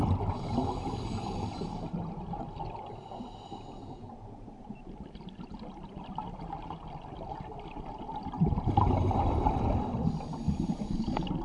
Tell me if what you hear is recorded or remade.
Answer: recorded